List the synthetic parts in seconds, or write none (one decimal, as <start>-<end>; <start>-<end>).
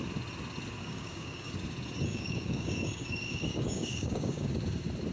0.8-1.5; 2.1-4.5